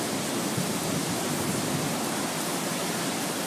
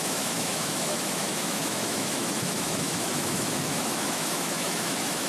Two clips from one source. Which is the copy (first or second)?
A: second